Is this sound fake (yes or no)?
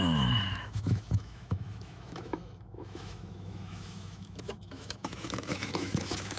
yes